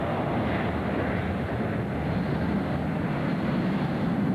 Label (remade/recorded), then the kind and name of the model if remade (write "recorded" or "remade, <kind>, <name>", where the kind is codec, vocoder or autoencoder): recorded